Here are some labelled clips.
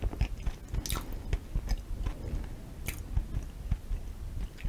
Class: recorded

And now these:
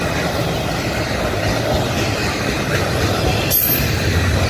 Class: recorded